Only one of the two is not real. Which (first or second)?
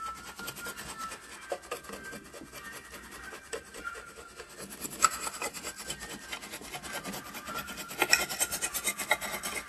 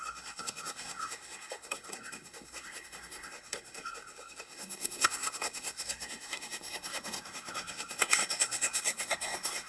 second